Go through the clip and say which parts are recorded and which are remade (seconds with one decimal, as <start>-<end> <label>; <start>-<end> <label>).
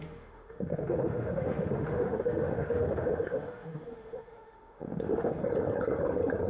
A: 0.0-5.4 remade; 5.4-6.5 recorded